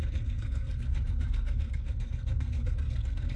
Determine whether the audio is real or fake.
fake